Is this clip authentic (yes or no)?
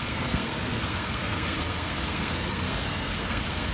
no